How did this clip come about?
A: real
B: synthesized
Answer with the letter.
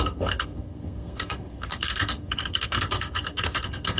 B